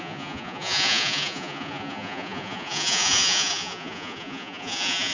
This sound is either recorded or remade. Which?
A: remade